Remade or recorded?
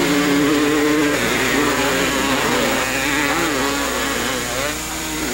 recorded